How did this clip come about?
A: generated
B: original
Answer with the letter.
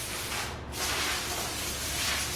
B